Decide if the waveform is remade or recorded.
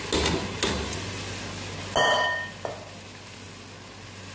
recorded